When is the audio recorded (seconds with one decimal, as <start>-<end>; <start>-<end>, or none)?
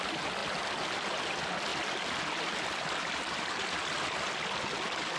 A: 0.0-0.4; 1.2-1.7; 4.2-5.2